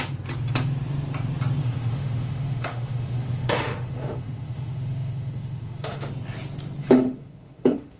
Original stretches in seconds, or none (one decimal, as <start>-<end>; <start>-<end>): 0.0-1.6; 6.1-6.8

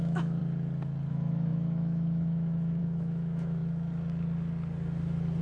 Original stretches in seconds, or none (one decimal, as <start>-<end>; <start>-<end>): 0.4-1.1; 3.6-5.4